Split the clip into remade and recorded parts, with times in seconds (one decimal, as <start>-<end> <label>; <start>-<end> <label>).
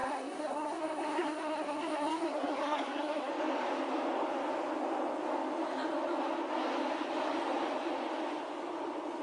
0.0-3.3 remade; 3.3-9.2 recorded